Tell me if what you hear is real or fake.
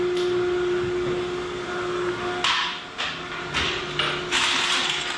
real